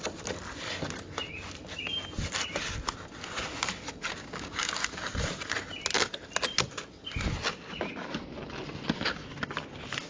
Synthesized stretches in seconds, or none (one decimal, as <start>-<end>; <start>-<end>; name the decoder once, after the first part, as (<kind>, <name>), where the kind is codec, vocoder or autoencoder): 4.2-4.7 (codec, DAC)